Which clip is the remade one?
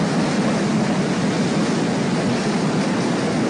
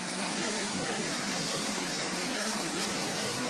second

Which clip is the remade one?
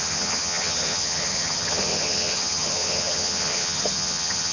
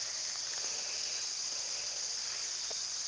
first